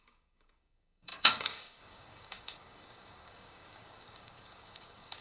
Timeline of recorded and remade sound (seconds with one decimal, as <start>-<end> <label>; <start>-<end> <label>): 0.0-5.2 remade

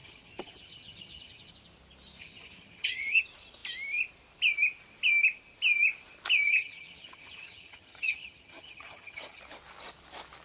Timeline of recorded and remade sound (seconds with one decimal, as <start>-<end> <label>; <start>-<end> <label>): 0.0-1.5 remade; 1.5-2.2 recorded; 2.2-3.2 remade; 3.2-6.5 recorded; 6.5-9.4 remade; 9.4-10.4 recorded

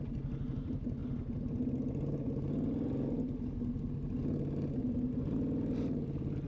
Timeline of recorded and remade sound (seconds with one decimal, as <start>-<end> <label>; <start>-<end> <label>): 0.0-1.0 remade; 1.0-4.9 recorded; 4.9-6.5 remade

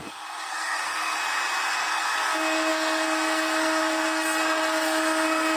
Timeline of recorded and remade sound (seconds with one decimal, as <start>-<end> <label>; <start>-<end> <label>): 0.0-1.2 remade; 1.2-1.7 recorded; 1.7-5.6 remade

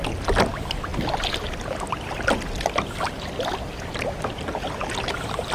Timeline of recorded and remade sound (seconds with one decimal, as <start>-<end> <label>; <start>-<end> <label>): 0.0-5.5 recorded

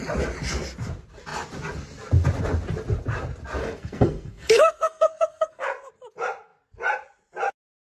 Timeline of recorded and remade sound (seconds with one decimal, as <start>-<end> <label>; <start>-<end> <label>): 0.0-3.6 recorded; 3.6-5.9 remade; 5.9-7.8 recorded

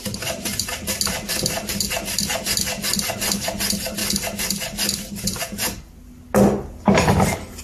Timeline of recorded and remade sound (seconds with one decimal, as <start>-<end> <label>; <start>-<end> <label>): 0.0-7.6 recorded